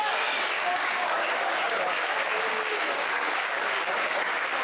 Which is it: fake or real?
fake